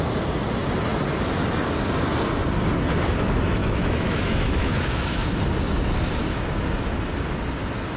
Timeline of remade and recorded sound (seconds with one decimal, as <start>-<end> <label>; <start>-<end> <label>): 0.0-3.6 recorded; 3.6-5.4 remade; 5.4-8.0 recorded